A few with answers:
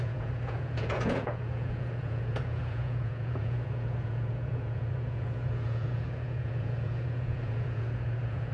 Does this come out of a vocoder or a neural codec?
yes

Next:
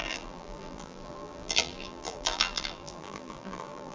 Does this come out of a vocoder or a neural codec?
yes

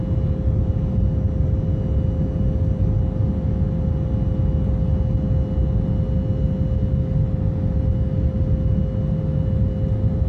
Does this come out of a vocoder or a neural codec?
no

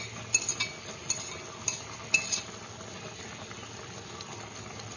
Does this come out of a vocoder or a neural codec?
no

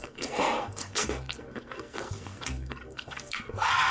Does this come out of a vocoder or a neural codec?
yes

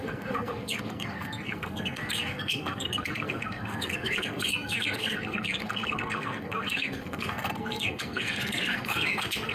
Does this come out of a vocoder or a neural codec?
yes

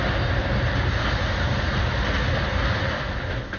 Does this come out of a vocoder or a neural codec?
no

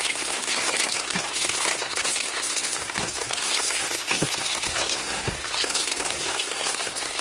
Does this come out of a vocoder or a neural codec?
yes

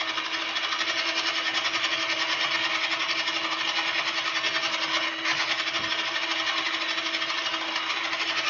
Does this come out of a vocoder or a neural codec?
no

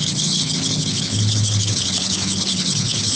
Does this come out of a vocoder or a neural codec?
yes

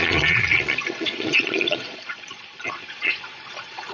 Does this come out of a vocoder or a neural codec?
yes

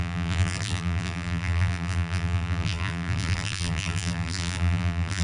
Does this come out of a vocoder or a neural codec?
yes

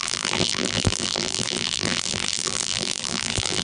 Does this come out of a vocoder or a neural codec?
yes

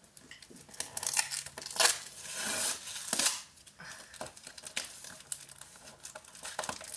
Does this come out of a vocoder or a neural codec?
no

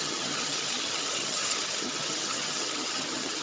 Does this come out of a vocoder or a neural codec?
yes